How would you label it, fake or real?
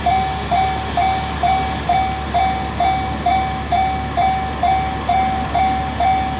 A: real